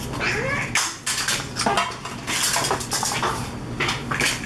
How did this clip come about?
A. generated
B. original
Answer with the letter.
B